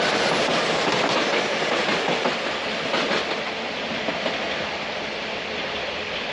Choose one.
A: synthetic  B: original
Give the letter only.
B